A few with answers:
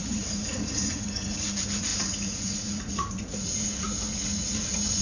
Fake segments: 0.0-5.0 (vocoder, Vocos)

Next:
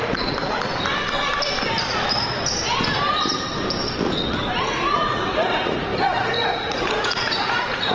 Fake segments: 0.0-0.7 (vocoder, Vocos); 4.6-7.9

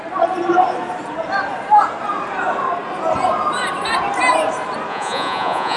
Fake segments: 4.9-5.8 (vocoder, Vocos)

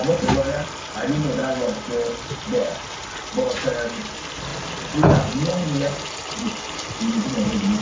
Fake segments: none

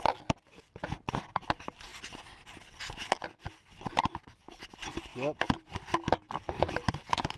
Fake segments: none

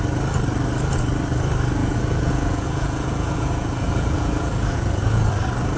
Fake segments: 1.8-5.3 (vocoder, Vocos)